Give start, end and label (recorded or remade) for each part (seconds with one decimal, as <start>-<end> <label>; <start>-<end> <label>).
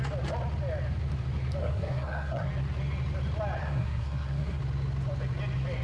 0.0-1.6 recorded; 1.6-2.5 remade; 2.5-3.6 recorded; 3.6-4.6 remade; 4.6-5.8 recorded